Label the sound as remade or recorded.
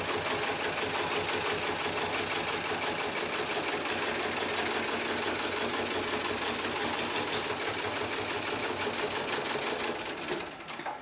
recorded